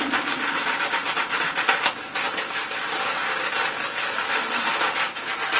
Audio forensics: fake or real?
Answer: real